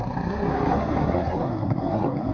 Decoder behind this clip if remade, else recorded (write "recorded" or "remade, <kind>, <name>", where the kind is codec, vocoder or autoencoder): remade, codec, SNAC